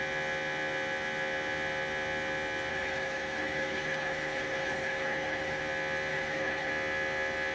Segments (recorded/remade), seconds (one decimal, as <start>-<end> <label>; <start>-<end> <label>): 0.0-2.7 recorded; 2.7-5.6 remade; 5.6-6.1 recorded; 6.1-6.7 remade; 6.7-7.5 recorded